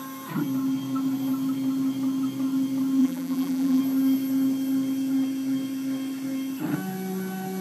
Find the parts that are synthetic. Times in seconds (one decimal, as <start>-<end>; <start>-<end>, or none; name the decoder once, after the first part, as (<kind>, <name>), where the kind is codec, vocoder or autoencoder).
3.0-3.8 (vocoder, BigVGAN v2)